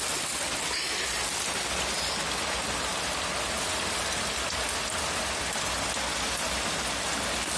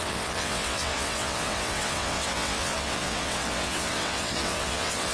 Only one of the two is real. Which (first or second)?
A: first